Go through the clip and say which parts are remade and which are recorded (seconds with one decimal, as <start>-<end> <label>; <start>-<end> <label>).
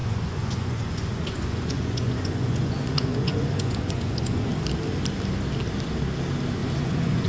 0.0-4.4 remade; 4.4-6.6 recorded; 6.6-7.3 remade